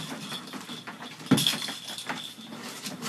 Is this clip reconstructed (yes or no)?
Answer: no